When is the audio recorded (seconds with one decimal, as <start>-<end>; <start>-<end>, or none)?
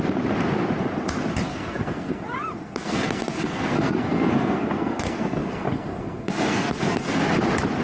0.0-1.5; 2.2-2.6; 7.2-7.8